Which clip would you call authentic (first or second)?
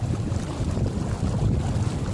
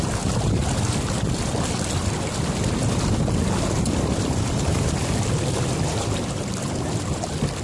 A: second